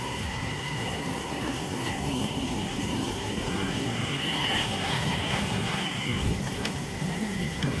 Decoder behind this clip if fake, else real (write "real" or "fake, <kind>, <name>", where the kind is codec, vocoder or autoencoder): fake, codec, SNAC